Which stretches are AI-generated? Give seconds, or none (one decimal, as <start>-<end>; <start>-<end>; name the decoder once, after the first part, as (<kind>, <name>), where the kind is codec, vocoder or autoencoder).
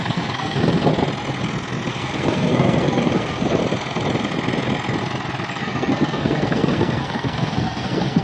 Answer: 0.0-0.9 (codec, SNAC); 1.9-3.6; 5.5-8.2